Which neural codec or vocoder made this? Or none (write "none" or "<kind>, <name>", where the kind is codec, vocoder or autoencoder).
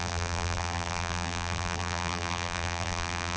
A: vocoder, BigVGAN v2